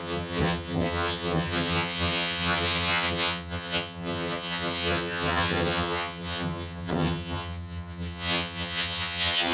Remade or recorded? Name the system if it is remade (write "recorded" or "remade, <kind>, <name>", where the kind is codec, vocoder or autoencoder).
remade, vocoder, HiFi-GAN